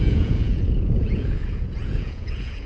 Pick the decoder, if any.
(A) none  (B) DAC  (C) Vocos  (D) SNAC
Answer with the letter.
C